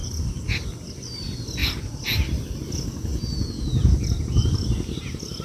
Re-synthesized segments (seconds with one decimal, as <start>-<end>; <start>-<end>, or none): none